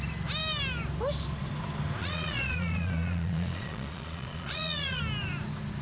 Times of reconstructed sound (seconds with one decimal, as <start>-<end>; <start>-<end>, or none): 2.0-5.0